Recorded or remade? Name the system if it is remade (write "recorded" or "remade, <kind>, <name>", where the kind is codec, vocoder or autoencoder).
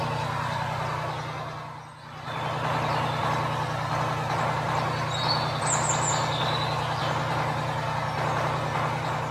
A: recorded